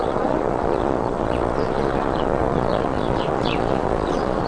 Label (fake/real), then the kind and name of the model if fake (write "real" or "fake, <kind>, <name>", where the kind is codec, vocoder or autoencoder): fake, vocoder, Vocos